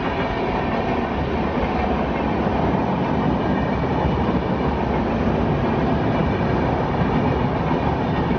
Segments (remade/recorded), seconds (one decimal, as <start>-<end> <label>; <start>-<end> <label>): 0.0-8.4 recorded